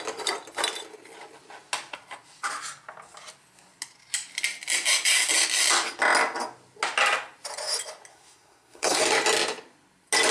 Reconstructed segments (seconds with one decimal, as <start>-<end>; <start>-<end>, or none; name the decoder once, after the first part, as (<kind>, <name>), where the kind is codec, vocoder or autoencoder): 8.1-9.0 (codec, SNAC)